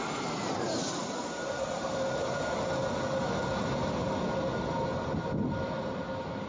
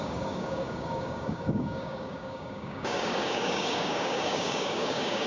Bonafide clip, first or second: first